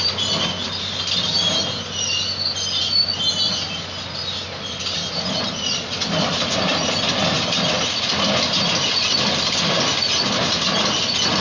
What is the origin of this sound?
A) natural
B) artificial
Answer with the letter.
A